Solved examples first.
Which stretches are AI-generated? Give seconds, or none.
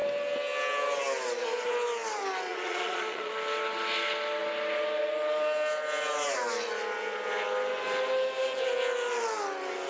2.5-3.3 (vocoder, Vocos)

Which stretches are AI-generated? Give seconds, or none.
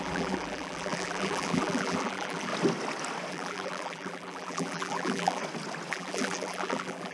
0.0-2.5 (vocoder, BigVGAN v2); 3.3-5.4; 5.9-7.1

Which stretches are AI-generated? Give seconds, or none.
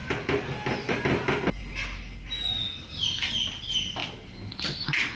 none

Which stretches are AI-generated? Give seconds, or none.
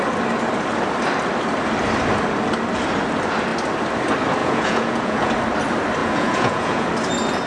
4.4-5.3 (vocoder, Vocos); 6.0-6.9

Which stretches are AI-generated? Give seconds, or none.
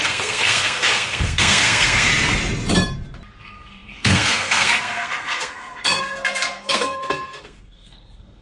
0.0-2.1 (codec, SNAC); 3.4-8.4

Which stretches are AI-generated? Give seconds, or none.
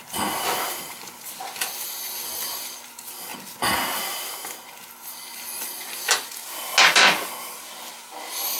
none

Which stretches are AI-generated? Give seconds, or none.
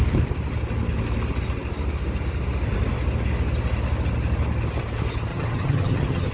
5.3-6.3 (vocoder, HiFi-GAN)